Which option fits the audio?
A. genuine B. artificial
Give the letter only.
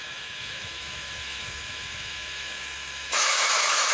B